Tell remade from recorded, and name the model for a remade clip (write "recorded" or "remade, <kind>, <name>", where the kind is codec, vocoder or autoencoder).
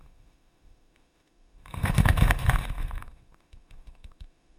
remade, autoencoder, DAC-VAE